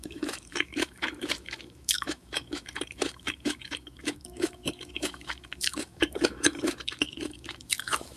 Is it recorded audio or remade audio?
remade